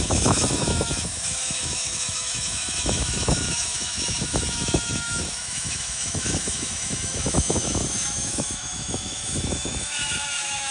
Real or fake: fake